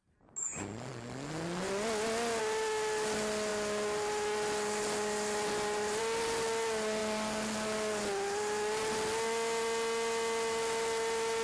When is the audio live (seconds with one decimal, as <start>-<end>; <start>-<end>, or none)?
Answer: 0.0-11.4